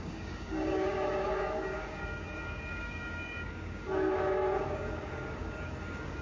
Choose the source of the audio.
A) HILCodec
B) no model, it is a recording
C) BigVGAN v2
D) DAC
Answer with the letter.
D